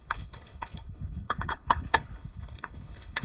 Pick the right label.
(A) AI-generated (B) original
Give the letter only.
A